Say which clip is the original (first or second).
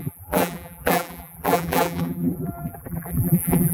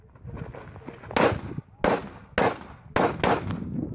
second